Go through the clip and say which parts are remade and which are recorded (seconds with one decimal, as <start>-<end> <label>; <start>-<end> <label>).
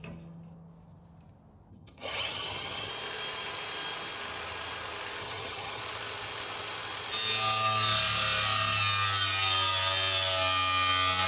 0.0-1.7 recorded; 1.7-2.9 remade; 2.9-5.2 recorded; 5.2-5.8 remade; 5.8-11.3 recorded